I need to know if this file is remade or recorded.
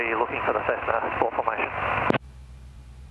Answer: recorded